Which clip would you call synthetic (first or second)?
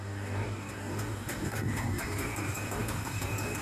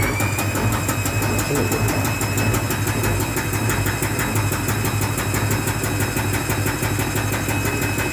first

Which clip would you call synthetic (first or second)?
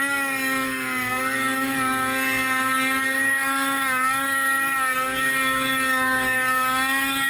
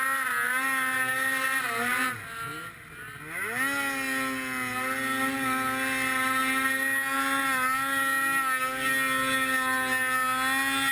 first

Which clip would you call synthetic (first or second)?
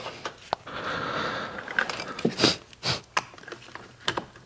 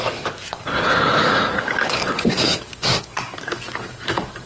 second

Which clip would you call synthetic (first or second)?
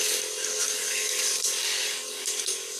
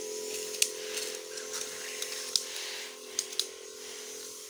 first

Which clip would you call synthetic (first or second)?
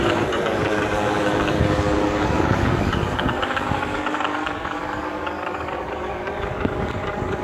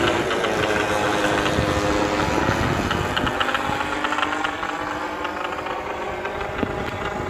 first